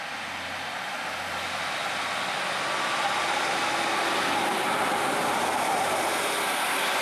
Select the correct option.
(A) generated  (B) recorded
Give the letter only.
B